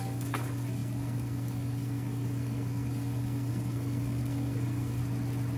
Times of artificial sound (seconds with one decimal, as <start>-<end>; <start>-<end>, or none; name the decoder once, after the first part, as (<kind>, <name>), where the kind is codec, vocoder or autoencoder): 0.0-5.0 (codec, SNAC)